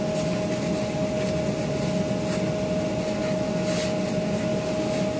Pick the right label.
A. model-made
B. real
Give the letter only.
B